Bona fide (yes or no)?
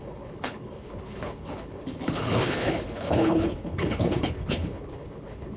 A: no